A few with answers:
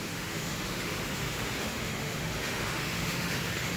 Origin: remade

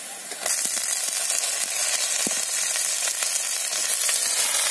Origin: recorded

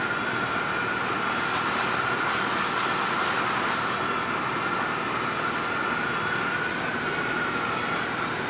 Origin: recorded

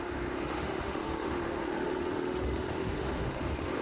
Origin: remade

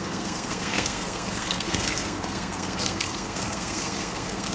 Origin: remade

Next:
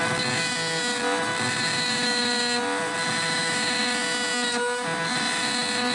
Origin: recorded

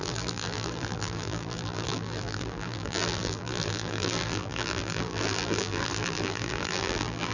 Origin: remade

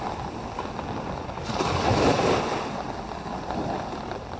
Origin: recorded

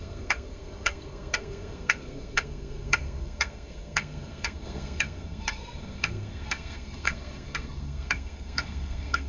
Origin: remade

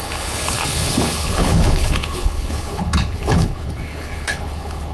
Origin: remade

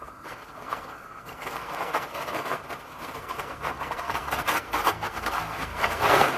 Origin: remade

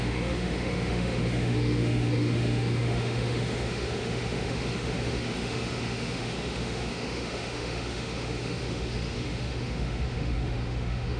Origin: remade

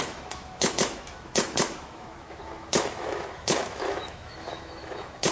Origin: remade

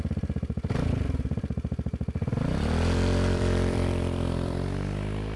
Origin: remade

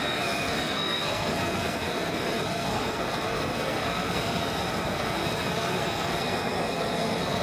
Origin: remade